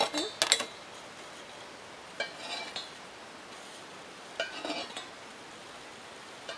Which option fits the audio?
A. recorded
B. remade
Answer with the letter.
A